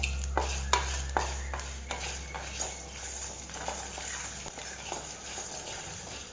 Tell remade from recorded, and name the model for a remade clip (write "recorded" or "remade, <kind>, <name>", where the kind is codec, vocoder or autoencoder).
recorded